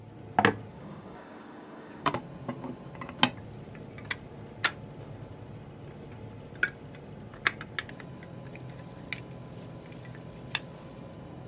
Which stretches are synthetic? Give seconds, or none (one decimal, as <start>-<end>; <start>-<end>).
0.7-2.2